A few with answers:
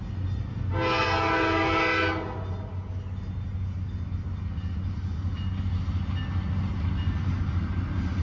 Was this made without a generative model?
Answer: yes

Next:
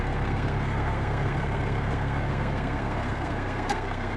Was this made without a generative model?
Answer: no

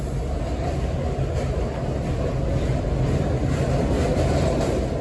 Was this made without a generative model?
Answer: yes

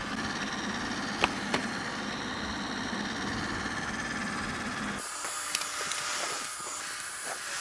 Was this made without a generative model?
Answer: yes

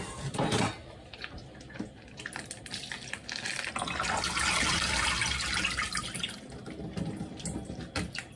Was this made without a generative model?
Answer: yes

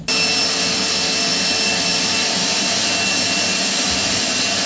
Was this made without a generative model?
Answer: yes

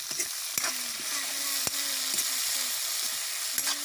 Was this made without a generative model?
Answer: yes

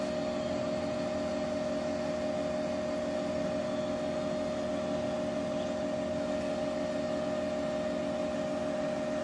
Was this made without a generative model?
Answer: yes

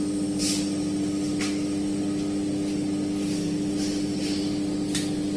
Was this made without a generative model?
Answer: yes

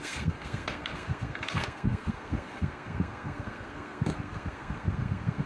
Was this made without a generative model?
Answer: no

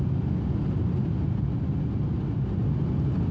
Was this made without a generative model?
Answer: yes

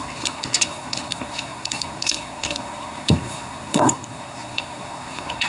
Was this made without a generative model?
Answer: no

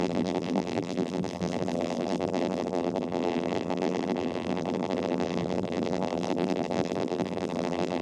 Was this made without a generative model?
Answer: no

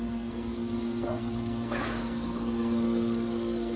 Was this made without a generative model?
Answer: no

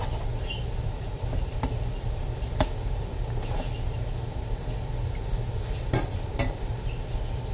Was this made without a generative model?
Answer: yes